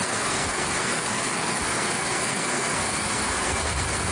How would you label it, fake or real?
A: fake